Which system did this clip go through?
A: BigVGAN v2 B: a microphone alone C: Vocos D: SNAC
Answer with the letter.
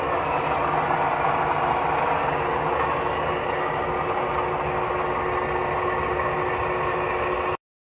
A